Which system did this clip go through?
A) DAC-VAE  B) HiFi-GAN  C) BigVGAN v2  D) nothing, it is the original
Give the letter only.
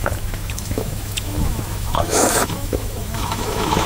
A